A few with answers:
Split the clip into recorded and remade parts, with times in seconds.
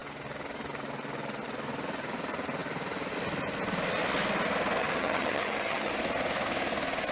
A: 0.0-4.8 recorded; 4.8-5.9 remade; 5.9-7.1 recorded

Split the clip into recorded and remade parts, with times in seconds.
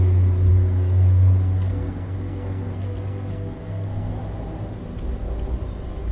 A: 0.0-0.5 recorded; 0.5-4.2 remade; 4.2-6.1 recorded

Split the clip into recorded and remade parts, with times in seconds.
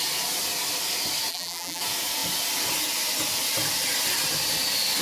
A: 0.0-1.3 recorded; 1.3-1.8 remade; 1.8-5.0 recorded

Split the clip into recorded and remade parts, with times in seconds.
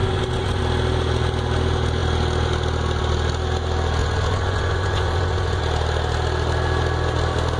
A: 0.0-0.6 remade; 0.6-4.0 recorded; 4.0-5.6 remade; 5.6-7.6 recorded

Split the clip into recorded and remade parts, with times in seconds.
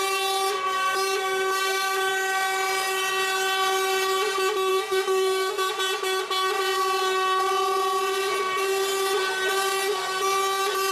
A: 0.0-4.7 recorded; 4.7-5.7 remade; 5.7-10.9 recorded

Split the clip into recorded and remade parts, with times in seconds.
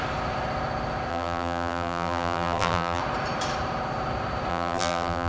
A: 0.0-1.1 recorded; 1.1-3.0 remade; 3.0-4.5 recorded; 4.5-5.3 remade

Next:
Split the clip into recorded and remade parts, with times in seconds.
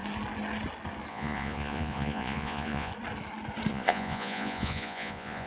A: 0.0-1.1 recorded; 1.1-2.9 remade; 2.9-3.7 recorded; 3.7-5.5 remade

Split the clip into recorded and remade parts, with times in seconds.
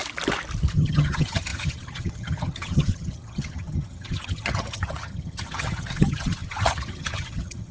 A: 0.0-0.7 recorded; 0.7-7.7 remade